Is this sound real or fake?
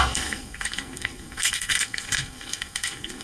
fake